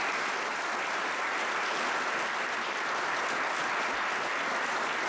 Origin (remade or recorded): recorded